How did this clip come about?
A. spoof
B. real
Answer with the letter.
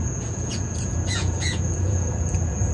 A